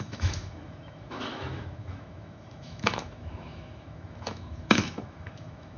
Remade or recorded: remade